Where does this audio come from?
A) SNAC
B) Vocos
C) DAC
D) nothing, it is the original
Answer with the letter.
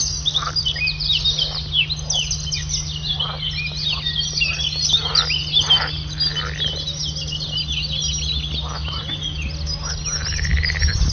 D